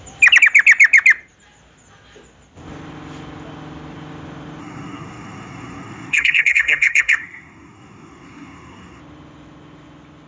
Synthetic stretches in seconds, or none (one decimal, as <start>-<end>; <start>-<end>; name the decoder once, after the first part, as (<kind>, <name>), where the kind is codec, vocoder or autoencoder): 4.6-9.0 (codec, SNAC)